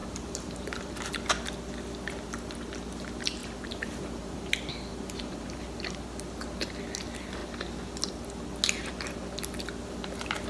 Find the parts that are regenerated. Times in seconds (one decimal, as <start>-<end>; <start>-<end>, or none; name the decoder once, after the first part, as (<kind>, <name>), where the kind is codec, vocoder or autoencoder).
0.0-0.9 (vocoder, BigVGAN v2); 3.4-4.5; 4.9-6.0